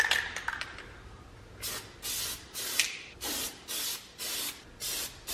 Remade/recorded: recorded